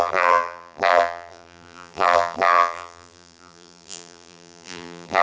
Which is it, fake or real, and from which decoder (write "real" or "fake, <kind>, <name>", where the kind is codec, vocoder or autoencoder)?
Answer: fake, vocoder, BigVGAN v2